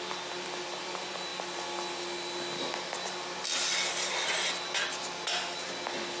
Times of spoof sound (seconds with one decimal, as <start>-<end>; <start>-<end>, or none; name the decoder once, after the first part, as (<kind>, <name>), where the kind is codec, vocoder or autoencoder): none